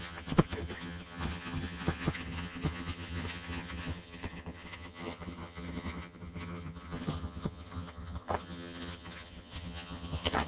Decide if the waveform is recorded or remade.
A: remade